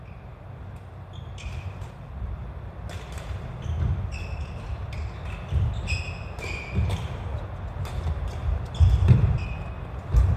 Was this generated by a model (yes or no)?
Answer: no